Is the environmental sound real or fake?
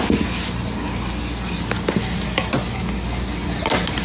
real